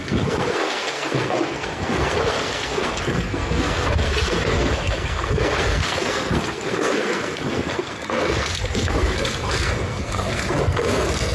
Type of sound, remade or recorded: remade